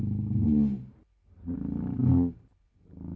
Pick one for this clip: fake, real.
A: real